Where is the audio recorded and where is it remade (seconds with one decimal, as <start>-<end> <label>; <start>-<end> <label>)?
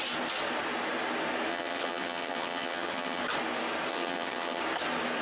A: 0.0-1.5 recorded; 1.5-3.2 remade; 3.2-3.9 recorded; 3.9-4.6 remade; 4.6-5.2 recorded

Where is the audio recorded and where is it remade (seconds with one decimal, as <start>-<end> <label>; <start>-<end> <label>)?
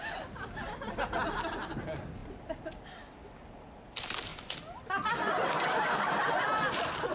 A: 0.0-7.1 recorded